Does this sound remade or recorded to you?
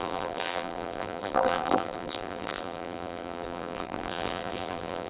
remade